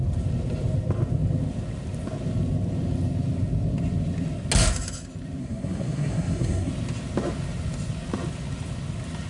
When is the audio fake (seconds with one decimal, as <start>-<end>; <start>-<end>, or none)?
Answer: 5.4-6.7